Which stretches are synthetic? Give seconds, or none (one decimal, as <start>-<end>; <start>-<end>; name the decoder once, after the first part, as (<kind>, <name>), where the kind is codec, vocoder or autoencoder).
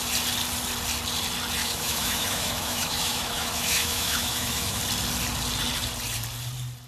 1.6-4.8 (autoencoder, DAC-VAE)